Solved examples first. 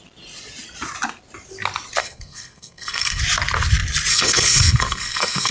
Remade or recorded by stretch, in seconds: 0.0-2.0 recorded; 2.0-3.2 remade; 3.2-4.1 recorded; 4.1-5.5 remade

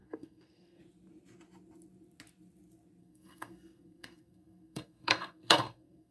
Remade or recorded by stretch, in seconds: 0.0-0.8 remade; 0.8-3.0 recorded; 3.0-6.1 remade